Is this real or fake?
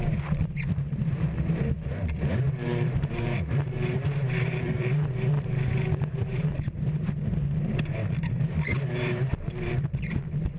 fake